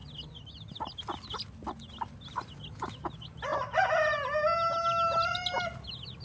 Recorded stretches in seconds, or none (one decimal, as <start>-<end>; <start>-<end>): 0.0-6.2